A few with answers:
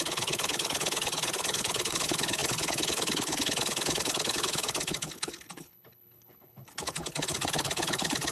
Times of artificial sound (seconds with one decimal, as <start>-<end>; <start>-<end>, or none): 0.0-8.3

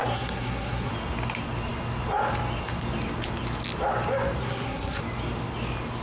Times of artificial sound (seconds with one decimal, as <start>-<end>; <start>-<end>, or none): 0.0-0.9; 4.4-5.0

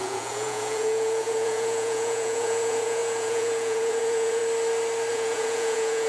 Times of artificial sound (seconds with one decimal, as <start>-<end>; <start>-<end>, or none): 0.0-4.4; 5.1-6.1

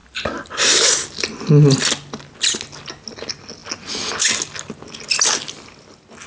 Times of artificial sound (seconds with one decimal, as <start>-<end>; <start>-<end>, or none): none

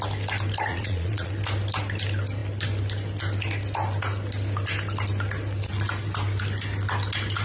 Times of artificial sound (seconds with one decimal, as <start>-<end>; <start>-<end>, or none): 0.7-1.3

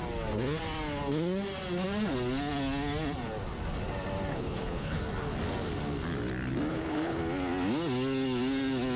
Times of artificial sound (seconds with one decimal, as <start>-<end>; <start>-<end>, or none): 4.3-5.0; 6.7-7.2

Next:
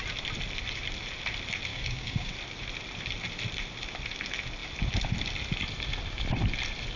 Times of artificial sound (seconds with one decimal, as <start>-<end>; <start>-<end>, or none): 1.7-2.3

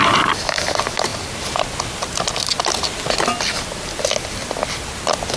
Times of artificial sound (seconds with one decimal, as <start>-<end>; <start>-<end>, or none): none